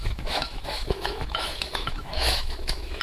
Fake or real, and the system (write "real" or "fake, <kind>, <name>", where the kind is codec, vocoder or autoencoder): fake, autoencoder, DAC-VAE